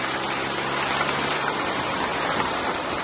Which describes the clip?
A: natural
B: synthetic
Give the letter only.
A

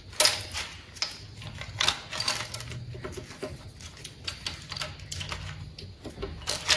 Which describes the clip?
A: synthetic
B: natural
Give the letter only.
B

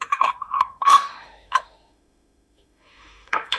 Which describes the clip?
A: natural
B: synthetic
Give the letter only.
B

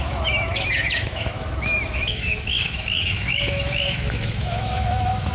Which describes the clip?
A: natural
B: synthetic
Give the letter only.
B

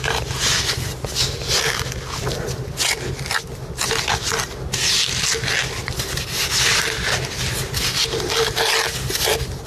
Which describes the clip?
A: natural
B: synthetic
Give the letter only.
A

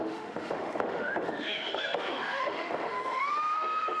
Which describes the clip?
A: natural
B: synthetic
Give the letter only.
B